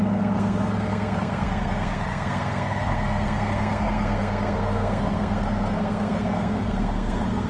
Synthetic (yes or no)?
yes